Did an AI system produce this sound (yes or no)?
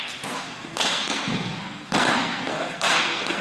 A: yes